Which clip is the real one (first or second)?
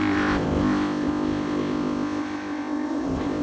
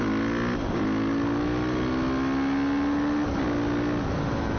second